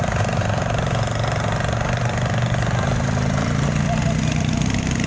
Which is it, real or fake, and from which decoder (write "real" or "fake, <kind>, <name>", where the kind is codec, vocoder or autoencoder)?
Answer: real